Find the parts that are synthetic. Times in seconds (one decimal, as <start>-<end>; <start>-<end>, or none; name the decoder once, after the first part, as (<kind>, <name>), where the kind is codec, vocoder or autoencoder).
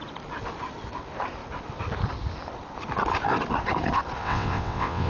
4.2-5.1 (vocoder, WaveNeXt)